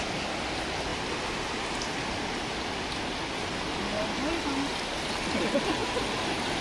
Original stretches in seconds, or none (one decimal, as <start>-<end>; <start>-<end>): 0.0-5.8